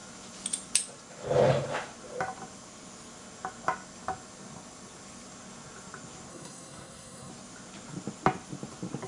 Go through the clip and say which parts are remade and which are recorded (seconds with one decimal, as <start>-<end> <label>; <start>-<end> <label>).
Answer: 0.0-6.3 recorded; 6.3-7.3 remade; 7.3-9.1 recorded